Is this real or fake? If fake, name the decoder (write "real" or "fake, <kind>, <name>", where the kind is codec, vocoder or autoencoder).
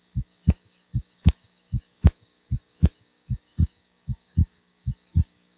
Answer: fake, codec, DAC